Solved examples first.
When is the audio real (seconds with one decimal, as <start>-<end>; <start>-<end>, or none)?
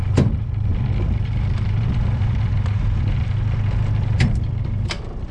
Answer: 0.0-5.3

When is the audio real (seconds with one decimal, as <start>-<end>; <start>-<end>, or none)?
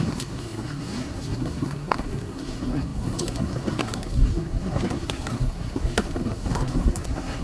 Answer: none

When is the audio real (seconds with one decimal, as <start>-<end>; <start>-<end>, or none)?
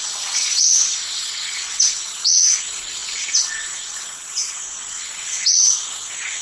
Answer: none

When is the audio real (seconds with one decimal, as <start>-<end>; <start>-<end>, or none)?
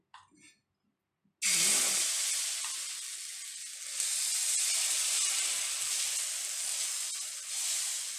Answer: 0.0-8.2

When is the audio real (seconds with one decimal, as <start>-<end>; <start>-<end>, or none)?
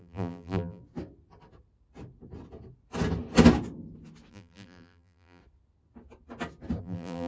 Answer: 0.8-4.3; 5.4-6.8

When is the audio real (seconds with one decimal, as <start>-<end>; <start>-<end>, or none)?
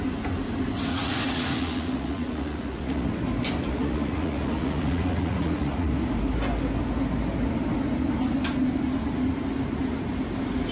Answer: 0.0-0.9; 3.1-3.7; 5.9-10.7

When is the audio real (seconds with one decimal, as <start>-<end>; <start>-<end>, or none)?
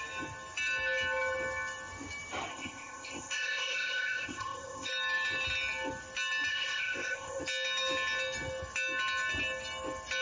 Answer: 0.0-2.5; 4.9-6.5; 7.4-10.2